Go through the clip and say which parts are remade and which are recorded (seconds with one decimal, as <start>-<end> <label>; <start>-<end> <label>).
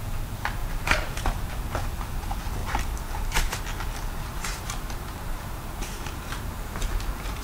0.0-0.6 recorded; 0.6-1.5 remade; 1.5-2.6 recorded; 2.6-3.6 remade; 3.6-4.3 recorded; 4.3-6.9 remade; 6.9-7.4 recorded